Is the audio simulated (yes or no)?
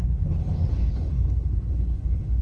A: yes